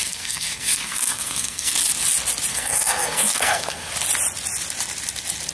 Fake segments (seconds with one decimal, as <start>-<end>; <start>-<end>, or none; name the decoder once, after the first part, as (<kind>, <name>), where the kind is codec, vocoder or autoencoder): 0.0-1.7 (codec, SNAC); 2.5-3.9